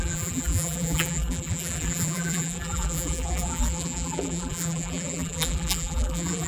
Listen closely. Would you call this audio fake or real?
fake